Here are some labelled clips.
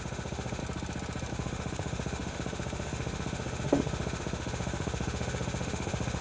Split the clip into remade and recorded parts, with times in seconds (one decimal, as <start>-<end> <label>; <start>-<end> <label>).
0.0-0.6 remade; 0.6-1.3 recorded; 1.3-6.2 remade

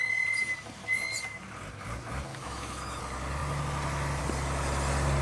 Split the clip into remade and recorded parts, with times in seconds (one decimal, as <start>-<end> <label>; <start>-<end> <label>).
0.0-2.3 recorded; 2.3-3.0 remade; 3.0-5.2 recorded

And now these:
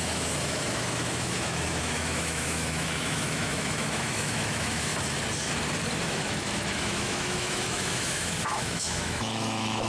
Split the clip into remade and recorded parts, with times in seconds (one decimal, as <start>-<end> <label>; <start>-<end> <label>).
0.0-4.9 remade; 4.9-6.0 recorded; 6.0-9.9 remade